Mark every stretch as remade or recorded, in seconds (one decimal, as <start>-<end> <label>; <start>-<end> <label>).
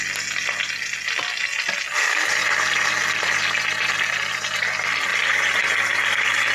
0.0-6.5 recorded